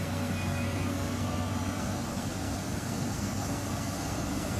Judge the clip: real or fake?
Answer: fake